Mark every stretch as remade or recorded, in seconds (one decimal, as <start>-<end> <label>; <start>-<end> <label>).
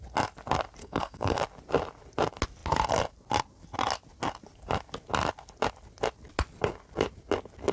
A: 0.0-0.8 recorded; 0.8-1.4 remade; 1.4-7.7 recorded